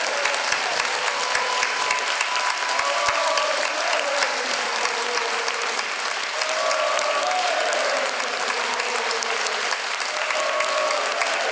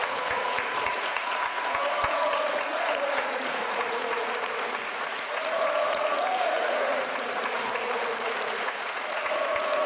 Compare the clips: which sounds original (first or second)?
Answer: first